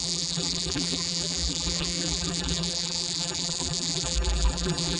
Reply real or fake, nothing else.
fake